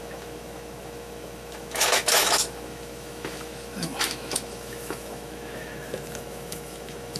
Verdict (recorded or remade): remade